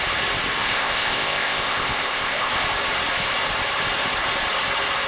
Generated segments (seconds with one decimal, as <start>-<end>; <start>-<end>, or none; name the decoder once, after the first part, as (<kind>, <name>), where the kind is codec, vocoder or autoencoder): 0.6-2.5 (codec, ZipCodec)